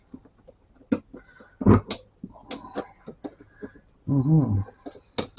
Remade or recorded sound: recorded